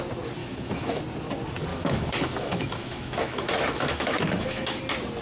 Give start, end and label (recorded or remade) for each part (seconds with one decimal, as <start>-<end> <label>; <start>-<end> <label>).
0.0-0.4 recorded; 0.4-1.0 remade; 1.0-1.7 recorded; 1.7-4.8 remade; 4.8-5.2 recorded